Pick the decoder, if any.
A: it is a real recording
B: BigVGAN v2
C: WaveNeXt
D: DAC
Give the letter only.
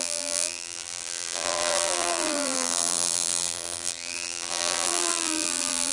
B